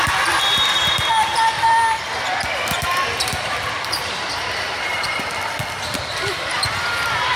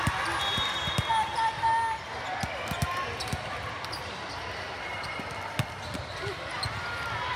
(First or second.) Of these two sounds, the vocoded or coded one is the first